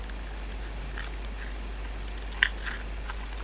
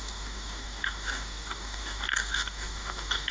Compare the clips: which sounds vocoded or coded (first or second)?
second